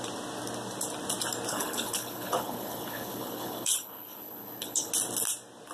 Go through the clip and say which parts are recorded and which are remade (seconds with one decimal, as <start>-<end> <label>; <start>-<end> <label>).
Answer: 0.0-1.5 recorded; 1.5-4.9 remade; 4.9-5.7 recorded

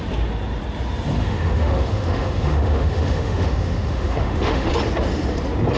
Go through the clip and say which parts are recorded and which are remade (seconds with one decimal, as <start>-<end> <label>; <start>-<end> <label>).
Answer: 0.0-1.2 recorded; 1.2-4.7 remade; 4.7-5.8 recorded